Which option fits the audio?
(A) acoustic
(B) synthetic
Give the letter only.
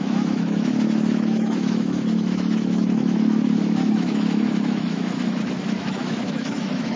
B